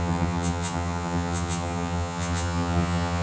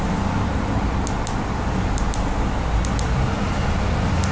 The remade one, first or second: first